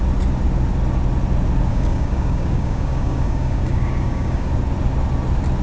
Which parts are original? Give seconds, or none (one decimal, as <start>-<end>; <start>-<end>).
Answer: 0.0-1.7; 4.5-5.6